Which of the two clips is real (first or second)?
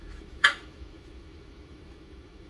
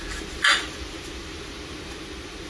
second